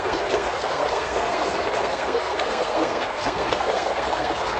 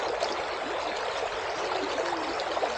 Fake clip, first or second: first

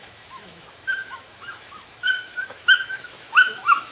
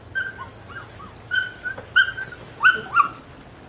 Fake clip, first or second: first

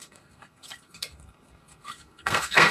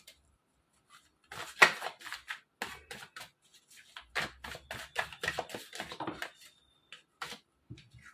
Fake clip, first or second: first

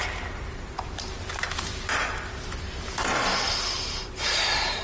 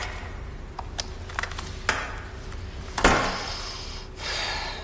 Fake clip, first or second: first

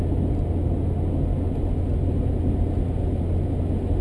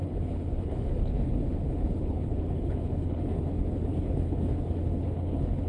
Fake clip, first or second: second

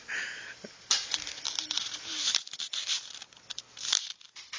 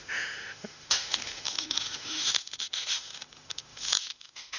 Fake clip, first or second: second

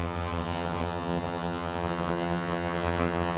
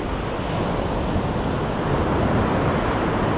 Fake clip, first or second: first